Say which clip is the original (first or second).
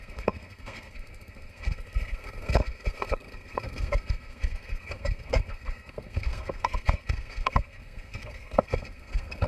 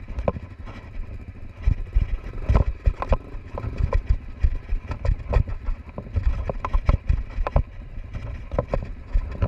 second